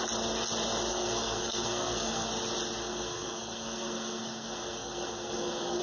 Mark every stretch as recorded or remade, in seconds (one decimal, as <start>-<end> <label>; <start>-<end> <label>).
0.0-0.9 recorded; 0.9-2.3 remade; 2.3-2.8 recorded; 2.8-5.8 remade